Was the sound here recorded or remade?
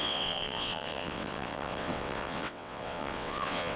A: remade